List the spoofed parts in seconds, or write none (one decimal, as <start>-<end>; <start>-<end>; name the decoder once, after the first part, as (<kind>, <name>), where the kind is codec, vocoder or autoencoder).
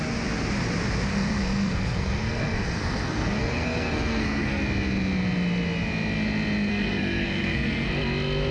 1.1-4.6 (codec, SNAC); 6.7-7.9